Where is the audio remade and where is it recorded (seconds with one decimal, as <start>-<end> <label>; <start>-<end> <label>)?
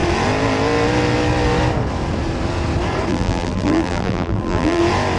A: 0.0-3.1 recorded; 3.1-4.8 remade; 4.8-5.2 recorded